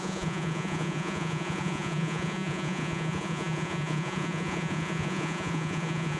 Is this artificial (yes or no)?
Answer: yes